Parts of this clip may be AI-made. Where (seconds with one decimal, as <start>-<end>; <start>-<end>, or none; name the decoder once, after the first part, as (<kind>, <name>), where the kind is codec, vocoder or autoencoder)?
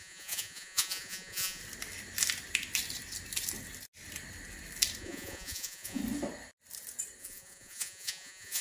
0.0-1.6 (vocoder, Vocos); 5.0-6.0; 7.2-8.6